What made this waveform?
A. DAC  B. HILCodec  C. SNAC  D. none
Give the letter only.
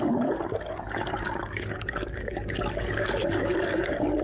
A